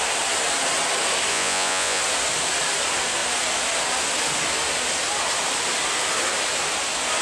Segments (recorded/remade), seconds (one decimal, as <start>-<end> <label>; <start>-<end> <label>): 0.0-1.3 recorded; 1.3-2.0 remade; 2.0-7.2 recorded